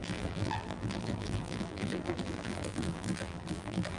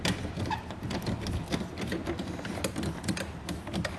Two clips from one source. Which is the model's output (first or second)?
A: first